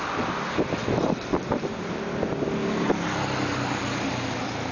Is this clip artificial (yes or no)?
no